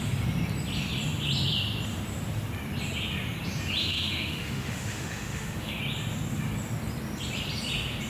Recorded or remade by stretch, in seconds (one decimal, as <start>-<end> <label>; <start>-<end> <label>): 0.0-3.8 recorded; 3.8-5.8 remade; 5.8-8.1 recorded